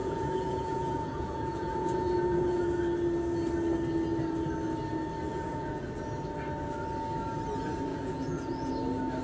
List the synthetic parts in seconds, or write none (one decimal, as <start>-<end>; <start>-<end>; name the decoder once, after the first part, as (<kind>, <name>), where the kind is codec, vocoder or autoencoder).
0.0-2.6 (vocoder, Vocos); 5.3-5.9; 7.9-8.7